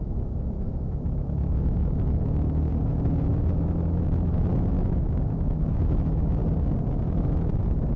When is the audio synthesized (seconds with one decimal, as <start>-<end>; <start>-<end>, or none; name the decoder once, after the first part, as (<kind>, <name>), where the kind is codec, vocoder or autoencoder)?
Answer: 0.0-2.7 (autoencoder, DAC-VAE); 3.2-6.4; 7.0-8.0

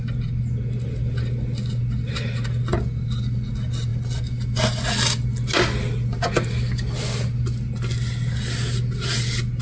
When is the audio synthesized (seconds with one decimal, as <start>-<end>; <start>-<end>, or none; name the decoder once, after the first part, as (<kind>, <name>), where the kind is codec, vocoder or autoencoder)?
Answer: none

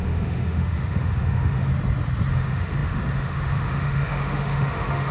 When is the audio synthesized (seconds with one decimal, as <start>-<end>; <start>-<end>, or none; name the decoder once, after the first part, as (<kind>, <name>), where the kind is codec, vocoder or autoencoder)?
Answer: 0.0-1.7 (autoencoder, DAC-VAE); 2.3-5.1